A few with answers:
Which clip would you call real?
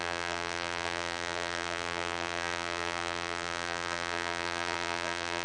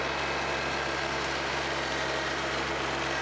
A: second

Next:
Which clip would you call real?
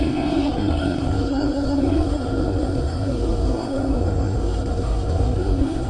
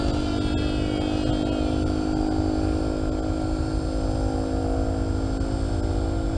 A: second